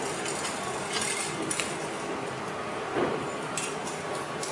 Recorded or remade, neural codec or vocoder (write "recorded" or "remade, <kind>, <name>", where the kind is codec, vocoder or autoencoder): recorded